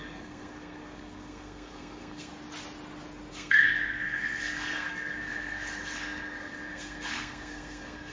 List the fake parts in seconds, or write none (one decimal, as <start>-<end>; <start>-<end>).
0.0-2.3; 3.3-8.1